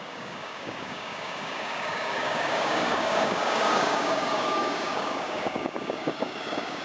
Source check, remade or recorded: remade